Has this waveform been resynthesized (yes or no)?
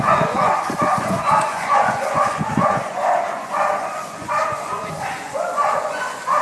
yes